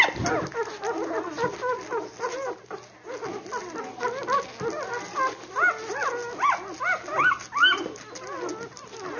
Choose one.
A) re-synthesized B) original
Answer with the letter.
B